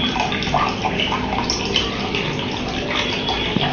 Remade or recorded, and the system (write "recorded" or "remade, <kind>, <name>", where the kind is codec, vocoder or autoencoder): recorded